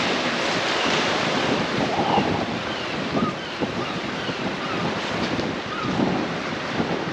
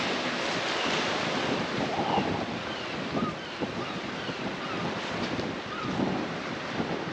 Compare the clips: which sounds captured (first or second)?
second